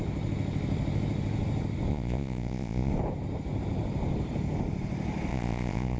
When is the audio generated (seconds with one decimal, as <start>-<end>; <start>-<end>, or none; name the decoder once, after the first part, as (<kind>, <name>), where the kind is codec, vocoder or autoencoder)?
1.9-2.9 (vocoder, Vocos); 5.3-6.0